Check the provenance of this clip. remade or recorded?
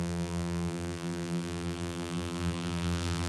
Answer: remade